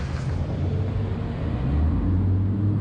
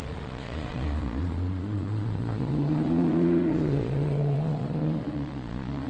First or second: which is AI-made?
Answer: second